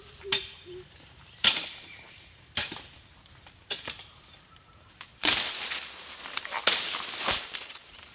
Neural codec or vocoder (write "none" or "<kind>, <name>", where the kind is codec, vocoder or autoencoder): vocoder, BigVGAN v2